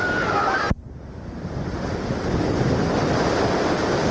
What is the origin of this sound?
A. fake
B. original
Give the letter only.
B